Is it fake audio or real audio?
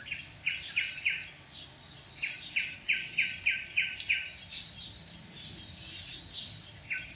real